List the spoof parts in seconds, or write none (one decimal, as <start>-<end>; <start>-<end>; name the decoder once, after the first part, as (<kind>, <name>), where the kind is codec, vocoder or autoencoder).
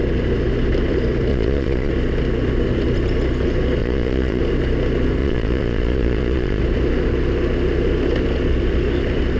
1.3-1.9 (vocoder, Vocos); 3.8-4.4; 5.2-6.6